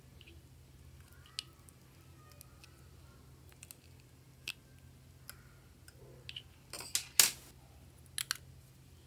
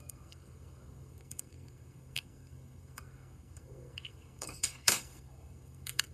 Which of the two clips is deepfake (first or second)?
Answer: second